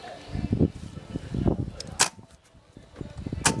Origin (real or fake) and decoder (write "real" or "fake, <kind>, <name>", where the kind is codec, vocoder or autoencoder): real